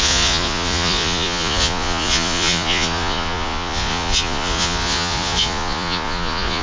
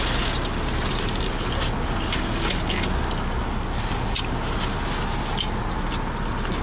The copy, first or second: first